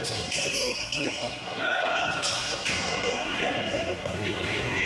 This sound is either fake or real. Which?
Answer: fake